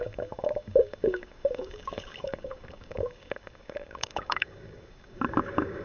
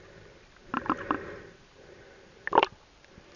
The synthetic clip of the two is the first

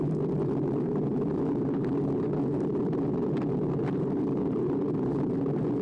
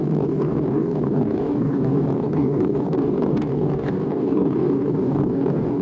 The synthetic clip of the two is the second